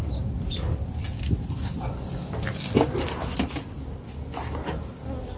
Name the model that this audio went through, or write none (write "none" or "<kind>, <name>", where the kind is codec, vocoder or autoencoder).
none